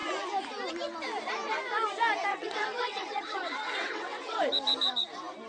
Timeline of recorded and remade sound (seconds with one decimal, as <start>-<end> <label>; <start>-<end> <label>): 0.0-2.3 recorded; 2.3-4.5 remade; 4.5-5.5 recorded